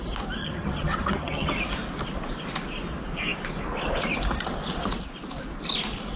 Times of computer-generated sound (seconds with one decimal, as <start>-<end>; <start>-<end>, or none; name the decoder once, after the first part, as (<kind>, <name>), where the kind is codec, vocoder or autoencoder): 0.4-1.5 (vocoder, HiFi-GAN)

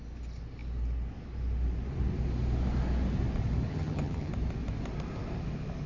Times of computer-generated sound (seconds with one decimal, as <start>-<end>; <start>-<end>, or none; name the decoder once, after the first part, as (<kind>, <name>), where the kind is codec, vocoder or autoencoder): 3.7-4.3 (vocoder, HiFi-GAN)

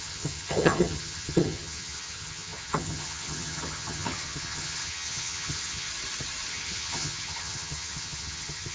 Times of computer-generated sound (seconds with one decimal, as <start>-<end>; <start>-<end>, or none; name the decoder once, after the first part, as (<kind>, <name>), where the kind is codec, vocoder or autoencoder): 0.0-5.9 (vocoder, HiFi-GAN); 6.5-8.7

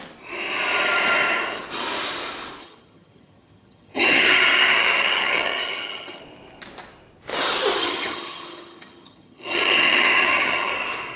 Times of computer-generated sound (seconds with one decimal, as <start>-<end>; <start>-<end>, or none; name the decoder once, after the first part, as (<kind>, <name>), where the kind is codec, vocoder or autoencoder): 2.6-6.2 (vocoder, HiFi-GAN); 7.8-10.7

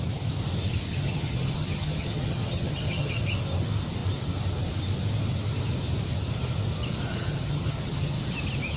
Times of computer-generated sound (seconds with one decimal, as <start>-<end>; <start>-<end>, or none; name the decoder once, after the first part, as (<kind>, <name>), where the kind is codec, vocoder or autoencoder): 0.9-3.2 (vocoder, HiFi-GAN); 7.1-8.2

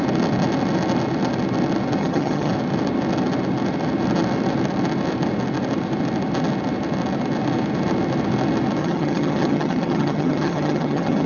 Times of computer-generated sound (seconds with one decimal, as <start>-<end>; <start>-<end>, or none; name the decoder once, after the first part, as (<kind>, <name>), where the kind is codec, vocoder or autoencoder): 2.0-2.5 (vocoder, HiFi-GAN); 8.8-11.3